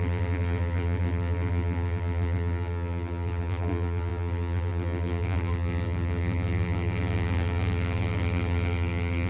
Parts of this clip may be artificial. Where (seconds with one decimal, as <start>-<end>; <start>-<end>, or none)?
0.0-9.3